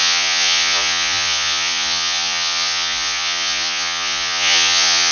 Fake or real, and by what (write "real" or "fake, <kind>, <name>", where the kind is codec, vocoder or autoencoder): fake, vocoder, Vocos